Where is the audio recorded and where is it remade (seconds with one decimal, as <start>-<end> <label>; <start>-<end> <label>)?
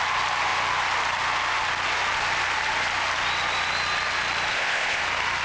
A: 0.0-4.5 recorded; 4.5-5.0 remade; 5.0-5.4 recorded